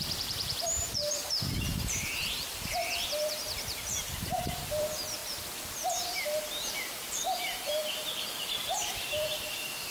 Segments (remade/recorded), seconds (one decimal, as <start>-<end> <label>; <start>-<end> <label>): 0.0-9.9 remade